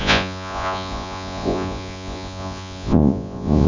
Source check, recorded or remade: remade